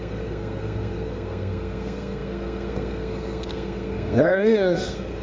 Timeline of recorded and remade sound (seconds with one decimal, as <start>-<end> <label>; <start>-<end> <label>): 0.0-5.2 remade